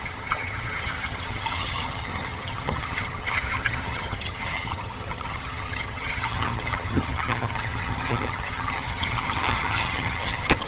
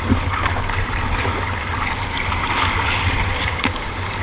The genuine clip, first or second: second